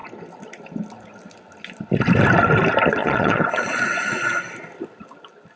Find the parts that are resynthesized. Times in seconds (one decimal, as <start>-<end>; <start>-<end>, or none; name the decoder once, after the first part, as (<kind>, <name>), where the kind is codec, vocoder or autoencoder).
3.0-4.5 (vocoder, Vocos)